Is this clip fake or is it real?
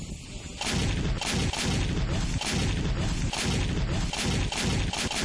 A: real